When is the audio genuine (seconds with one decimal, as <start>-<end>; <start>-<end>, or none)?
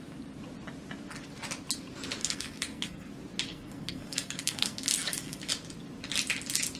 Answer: 0.0-2.2; 3.1-3.5; 5.4-6.8